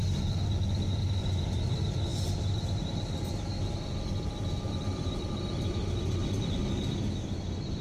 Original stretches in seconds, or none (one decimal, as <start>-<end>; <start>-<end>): 0.0-7.8